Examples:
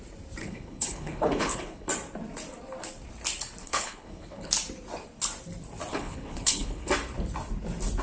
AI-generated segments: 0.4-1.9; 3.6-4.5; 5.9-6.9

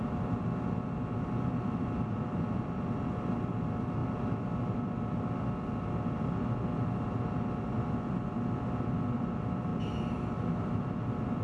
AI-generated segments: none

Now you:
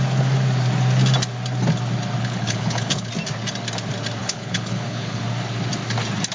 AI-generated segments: 2.2-3.1; 4.2-5.2